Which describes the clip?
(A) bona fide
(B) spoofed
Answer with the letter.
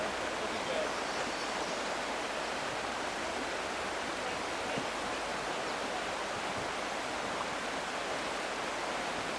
A